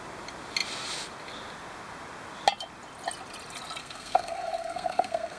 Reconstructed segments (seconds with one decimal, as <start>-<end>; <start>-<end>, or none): 3.8-5.4